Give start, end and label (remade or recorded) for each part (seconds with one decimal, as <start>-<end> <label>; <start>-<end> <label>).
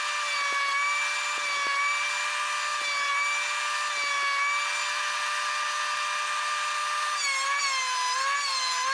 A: 0.0-8.9 recorded